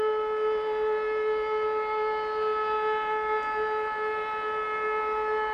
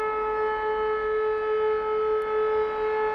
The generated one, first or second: first